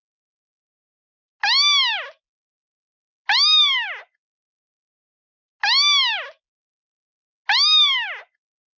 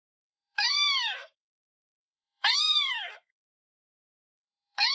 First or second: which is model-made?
second